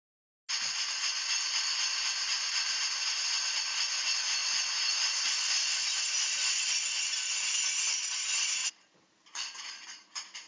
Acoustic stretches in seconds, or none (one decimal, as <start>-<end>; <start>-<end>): 0.0-8.6; 9.6-10.5